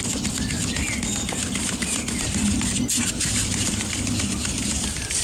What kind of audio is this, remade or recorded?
recorded